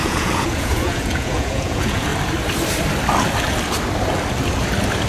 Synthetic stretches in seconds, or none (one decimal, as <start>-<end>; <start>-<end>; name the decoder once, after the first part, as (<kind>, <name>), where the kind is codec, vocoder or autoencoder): 0.0-2.1 (vocoder, Vocos)